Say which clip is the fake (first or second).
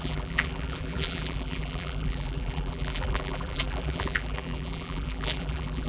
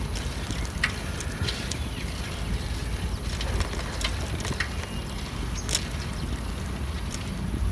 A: first